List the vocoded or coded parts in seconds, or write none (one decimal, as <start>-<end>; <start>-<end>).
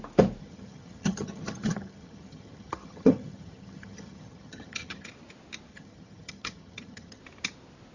0.4-5.1; 5.7-7.2